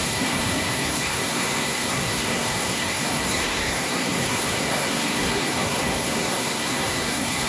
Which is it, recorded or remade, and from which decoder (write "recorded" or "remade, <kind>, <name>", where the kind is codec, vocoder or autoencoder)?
remade, codec, SNAC